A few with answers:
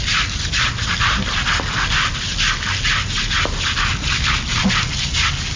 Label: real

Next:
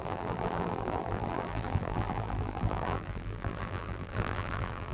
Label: fake